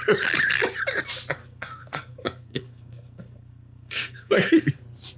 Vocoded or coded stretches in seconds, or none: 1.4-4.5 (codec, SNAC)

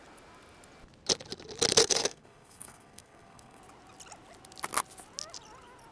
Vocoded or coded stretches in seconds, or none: 1.8-3.6 (codec, SNAC)

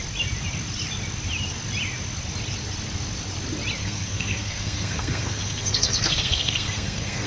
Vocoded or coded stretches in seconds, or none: 3.8-7.3 (codec, SNAC)

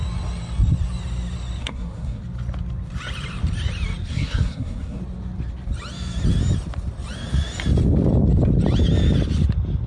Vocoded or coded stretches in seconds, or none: 1.6-2.2 (codec, SNAC); 4.1-5.0

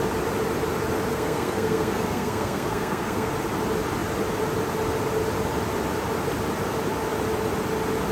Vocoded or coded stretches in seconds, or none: 1.1-3.3 (codec, SNAC)